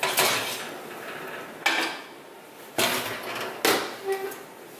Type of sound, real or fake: real